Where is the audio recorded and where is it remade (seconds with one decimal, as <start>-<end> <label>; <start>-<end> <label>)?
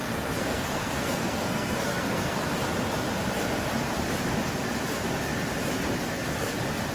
0.0-2.5 remade; 2.5-6.9 recorded